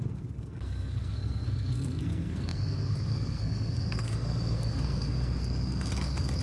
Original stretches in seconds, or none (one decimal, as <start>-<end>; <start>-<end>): none